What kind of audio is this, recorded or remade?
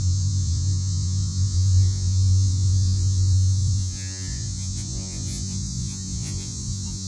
remade